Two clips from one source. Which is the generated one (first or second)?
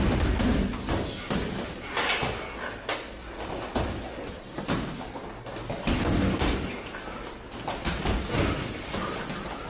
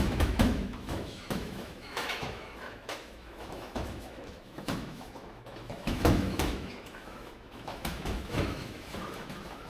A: second